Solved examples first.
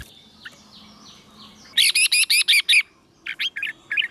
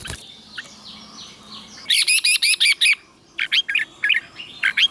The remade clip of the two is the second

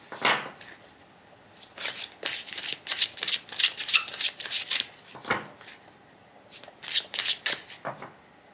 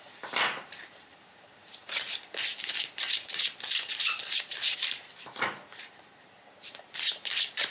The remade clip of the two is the second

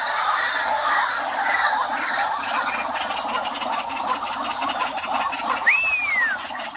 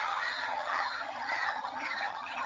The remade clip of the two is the second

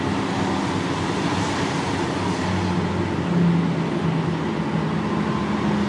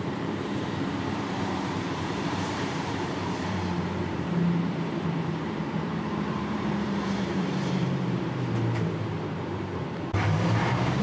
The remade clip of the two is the second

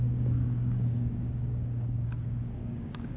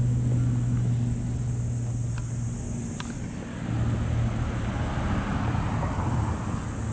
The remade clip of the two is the first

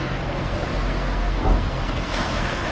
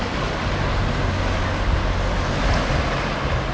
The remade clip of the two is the first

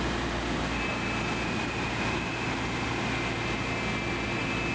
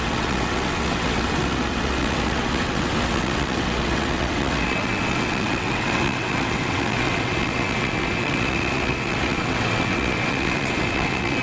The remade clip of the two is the second